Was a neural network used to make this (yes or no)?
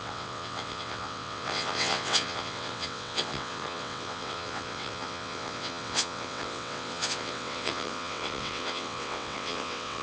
yes